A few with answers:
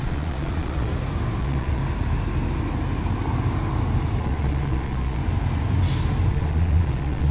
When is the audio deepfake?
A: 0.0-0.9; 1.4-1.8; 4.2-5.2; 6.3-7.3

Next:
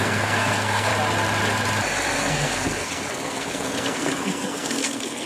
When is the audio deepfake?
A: 0.0-0.9; 2.2-5.3

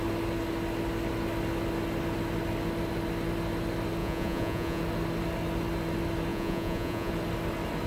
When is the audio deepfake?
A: 4.0-4.8; 6.3-7.1

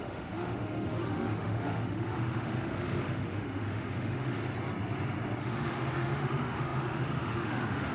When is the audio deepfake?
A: 0.0-4.4; 5.4-7.9

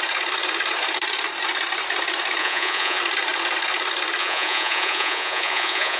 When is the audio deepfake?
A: 2.4-3.0; 4.2-6.0

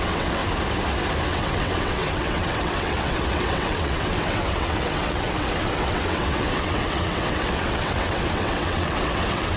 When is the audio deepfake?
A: 0.0-0.4; 1.3-9.6

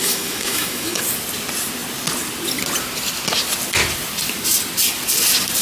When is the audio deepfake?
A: 0.0-1.0

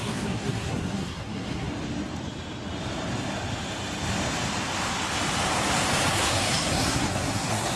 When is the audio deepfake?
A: 0.0-1.7; 6.1-7.8